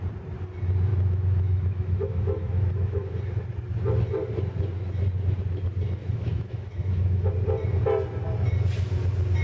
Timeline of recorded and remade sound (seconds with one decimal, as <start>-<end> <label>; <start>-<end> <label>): 0.0-0.9 recorded; 0.9-3.1 remade; 3.1-6.0 recorded; 6.0-7.3 remade; 7.3-9.4 recorded